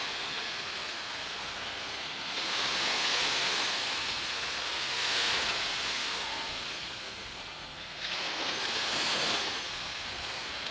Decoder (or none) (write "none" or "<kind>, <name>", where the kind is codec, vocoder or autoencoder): codec, SNAC